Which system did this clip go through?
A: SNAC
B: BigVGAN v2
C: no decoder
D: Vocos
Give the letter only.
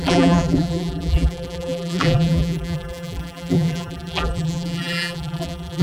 B